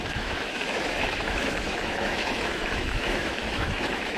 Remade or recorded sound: remade